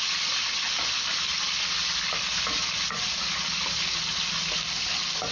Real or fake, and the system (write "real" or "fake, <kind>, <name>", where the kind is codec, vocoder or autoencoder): real